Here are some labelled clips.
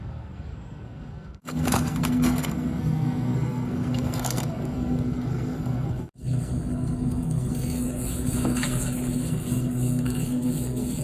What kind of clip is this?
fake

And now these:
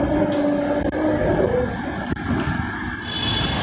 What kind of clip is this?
real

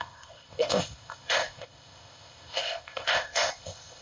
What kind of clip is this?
fake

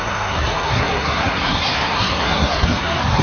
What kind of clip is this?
fake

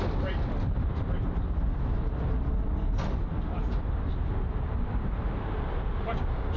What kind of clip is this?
fake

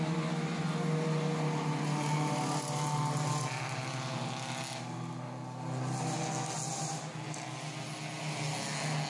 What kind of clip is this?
real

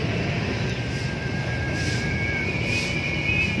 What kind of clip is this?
real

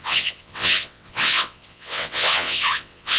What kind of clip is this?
fake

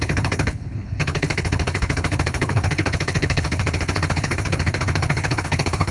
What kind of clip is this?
fake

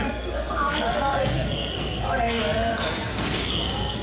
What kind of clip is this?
fake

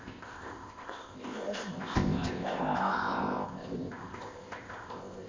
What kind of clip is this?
fake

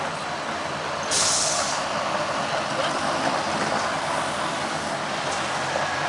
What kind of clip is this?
real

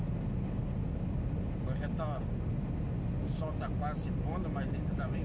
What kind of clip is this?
real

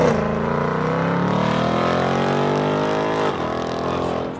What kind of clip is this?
real